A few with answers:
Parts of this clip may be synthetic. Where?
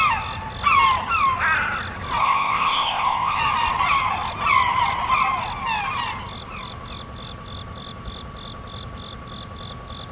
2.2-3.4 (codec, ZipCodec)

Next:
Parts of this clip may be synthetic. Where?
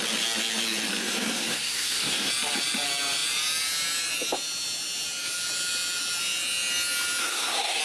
1.0-2.3 (codec, SNAC); 7.2-7.8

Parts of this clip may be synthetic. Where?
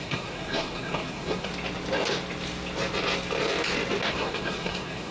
0.0-1.5 (codec, SNAC); 4.1-5.1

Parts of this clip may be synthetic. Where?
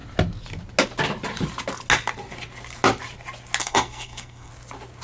3.6-4.5 (codec, SNAC)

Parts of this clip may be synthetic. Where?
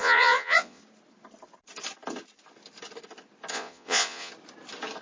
0.0-0.8 (vocoder, Vocos); 3.5-4.3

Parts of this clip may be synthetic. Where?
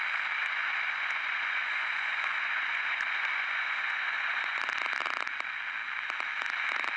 0.4-4.6 (vocoder, Vocos)